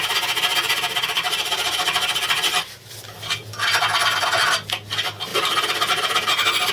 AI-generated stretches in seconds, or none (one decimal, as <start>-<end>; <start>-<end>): none